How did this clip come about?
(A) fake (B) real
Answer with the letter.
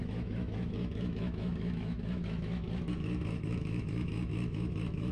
A